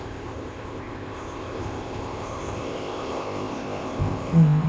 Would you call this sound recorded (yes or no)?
no